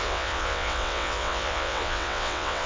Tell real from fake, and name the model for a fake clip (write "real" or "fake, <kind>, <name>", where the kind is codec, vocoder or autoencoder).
fake, vocoder, WaveNeXt